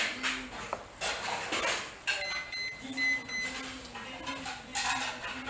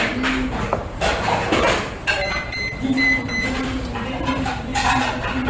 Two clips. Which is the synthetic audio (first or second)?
second